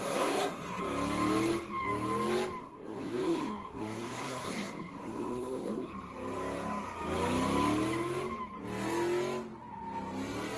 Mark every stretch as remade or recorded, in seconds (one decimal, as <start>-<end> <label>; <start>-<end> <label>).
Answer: 0.0-0.8 remade; 0.8-2.6 recorded; 2.6-5.9 remade; 5.9-10.6 recorded